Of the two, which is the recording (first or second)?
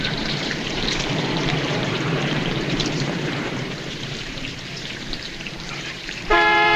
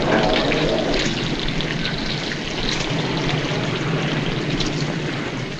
second